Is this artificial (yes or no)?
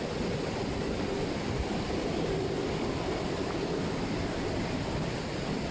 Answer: no